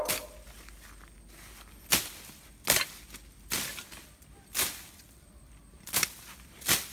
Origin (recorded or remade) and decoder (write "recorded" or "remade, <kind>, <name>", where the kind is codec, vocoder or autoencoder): recorded